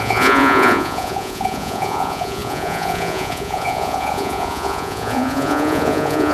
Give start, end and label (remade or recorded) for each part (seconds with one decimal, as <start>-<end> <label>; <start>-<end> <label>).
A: 0.0-6.3 remade